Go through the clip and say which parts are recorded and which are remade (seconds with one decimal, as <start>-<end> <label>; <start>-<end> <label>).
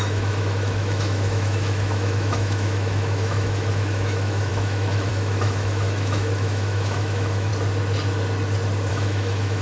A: 0.0-7.5 remade; 7.5-8.9 recorded; 8.9-9.6 remade